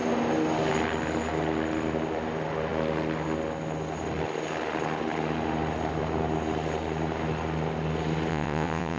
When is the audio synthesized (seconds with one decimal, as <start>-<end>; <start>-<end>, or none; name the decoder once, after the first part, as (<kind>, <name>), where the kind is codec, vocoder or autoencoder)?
8.3-9.0 (vocoder, WaveNeXt)

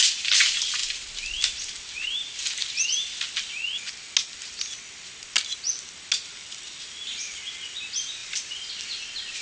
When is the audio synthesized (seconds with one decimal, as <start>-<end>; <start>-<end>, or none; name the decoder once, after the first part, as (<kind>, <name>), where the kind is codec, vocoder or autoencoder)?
none

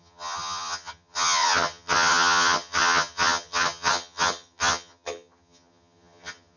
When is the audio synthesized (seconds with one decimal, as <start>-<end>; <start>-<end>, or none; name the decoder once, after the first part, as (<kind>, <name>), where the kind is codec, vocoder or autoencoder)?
0.0-6.6 (vocoder, HiFi-GAN)

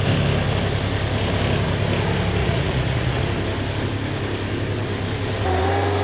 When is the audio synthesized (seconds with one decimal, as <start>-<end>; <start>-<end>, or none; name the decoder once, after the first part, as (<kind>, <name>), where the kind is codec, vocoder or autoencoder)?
2.4-3.2 (vocoder, Vocos)

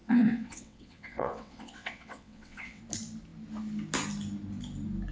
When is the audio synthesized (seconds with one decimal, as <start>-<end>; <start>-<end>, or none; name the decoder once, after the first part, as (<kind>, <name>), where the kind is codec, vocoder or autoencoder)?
0.0-2.8 (vocoder, WaveNeXt)

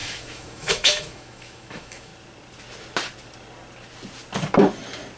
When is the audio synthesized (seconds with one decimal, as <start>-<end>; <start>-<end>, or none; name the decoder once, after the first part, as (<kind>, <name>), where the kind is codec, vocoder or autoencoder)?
0.0-2.1 (autoencoder, DAC-VAE)

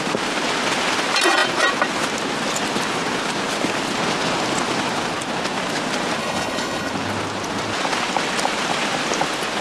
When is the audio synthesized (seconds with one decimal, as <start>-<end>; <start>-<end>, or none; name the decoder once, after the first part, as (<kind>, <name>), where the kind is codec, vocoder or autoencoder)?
6.2-6.9 (codec, HILCodec)